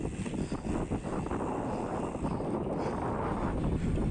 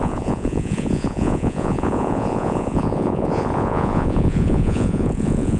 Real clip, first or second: first